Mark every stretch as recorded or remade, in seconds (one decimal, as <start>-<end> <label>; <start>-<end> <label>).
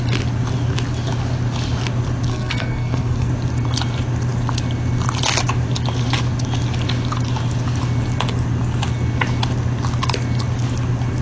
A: 0.0-2.3 recorded; 2.3-3.3 remade; 3.3-11.2 recorded